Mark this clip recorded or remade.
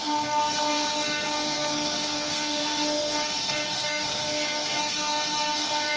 remade